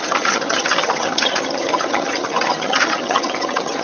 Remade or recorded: remade